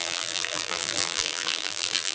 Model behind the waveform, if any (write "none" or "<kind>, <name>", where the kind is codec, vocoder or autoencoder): vocoder, BigVGAN v2